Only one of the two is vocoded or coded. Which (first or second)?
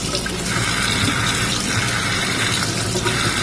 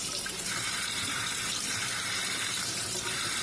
second